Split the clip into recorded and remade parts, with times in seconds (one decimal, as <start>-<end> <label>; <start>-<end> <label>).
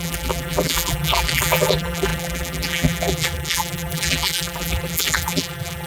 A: 0.0-5.9 remade